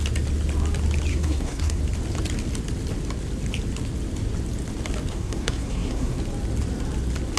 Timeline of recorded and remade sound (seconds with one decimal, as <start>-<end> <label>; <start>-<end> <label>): 0.0-1.1 recorded; 1.1-1.8 remade; 1.8-5.1 recorded; 5.1-6.2 remade; 6.2-7.4 recorded